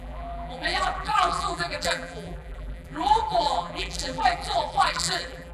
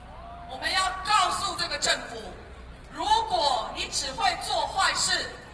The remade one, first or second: first